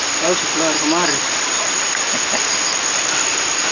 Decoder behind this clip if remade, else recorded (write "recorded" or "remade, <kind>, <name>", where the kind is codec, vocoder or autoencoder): recorded